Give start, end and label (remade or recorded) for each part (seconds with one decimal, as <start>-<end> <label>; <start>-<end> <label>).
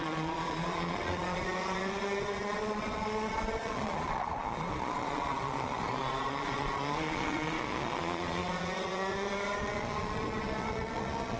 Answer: 0.0-11.4 remade